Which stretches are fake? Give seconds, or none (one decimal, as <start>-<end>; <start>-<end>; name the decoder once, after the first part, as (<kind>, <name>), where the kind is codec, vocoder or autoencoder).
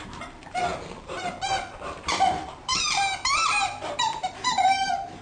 0.0-5.2 (vocoder, BigVGAN v2)